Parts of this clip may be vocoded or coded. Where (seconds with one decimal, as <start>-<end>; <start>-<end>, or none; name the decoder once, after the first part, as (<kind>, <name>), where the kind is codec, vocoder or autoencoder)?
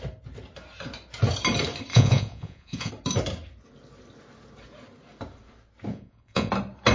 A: 1.9-2.9 (vocoder, Vocos); 5.9-6.5